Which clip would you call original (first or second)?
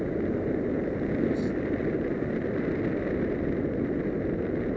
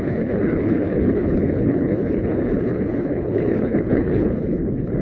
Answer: first